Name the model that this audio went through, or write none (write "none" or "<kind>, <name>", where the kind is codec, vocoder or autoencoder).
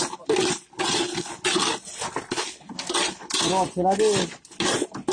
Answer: none